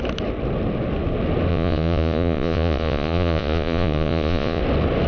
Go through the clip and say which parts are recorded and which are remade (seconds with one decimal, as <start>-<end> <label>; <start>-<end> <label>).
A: 0.0-1.5 recorded; 1.5-4.6 remade; 4.6-5.1 recorded